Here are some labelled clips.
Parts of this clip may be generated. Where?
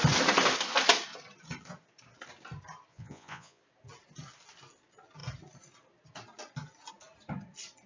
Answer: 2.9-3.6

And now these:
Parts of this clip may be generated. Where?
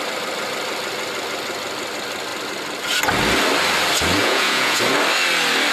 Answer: 4.2-4.8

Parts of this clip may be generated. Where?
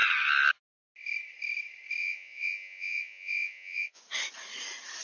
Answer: 2.0-4.0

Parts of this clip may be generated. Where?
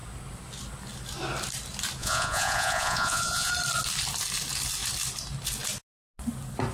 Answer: 2.0-3.5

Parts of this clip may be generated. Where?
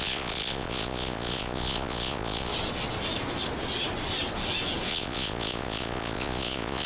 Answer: 0.0-2.5; 4.9-6.9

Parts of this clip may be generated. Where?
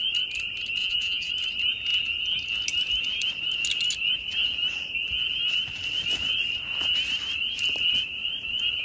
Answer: 0.8-1.3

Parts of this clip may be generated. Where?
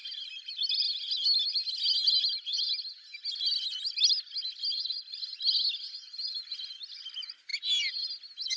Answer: none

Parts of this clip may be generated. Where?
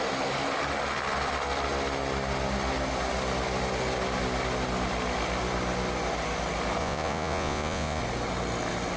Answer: 6.8-8.0